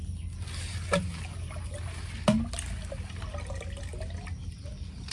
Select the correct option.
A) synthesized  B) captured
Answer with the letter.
B